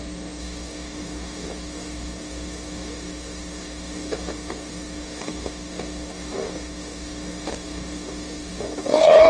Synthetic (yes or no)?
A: yes